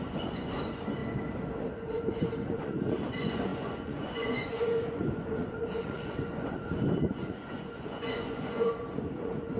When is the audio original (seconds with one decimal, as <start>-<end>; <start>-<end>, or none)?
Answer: 1.0-1.7